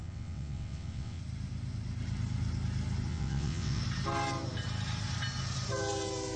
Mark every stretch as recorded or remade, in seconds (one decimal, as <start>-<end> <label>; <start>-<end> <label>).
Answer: 0.0-1.2 remade; 1.2-3.1 recorded; 3.1-3.8 remade; 3.8-6.4 recorded